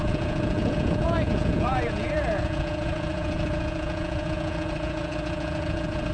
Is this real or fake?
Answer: fake